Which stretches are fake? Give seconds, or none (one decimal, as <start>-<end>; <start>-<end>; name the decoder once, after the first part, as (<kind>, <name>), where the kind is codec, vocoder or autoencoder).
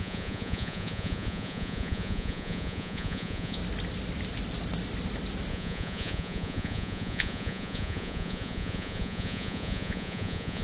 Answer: 0.0-3.6 (vocoder, Vocos); 5.5-10.6